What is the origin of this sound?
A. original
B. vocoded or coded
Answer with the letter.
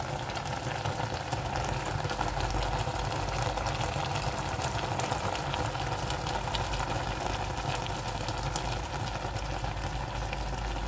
A